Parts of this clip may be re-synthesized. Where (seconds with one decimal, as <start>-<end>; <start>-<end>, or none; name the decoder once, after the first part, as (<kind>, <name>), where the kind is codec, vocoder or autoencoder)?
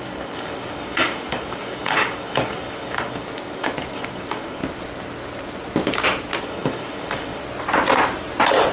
0.0-4.6 (codec, DAC); 6.4-7.4